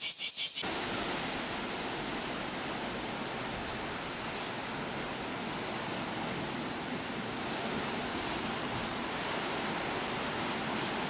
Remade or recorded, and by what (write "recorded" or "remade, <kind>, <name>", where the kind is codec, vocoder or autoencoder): recorded